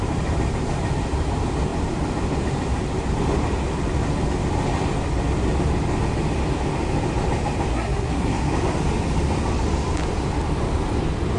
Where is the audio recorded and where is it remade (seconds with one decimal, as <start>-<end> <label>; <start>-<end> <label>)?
0.0-7.7 recorded; 7.7-8.5 remade; 8.5-11.4 recorded